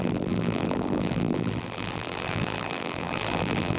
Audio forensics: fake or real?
fake